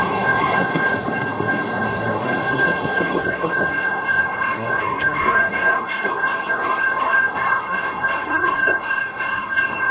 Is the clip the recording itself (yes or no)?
no